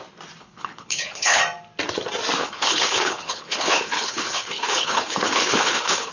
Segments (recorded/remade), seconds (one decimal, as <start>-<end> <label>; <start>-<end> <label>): 0.0-0.4 recorded; 0.4-1.4 remade; 1.4-2.4 recorded; 2.4-6.1 remade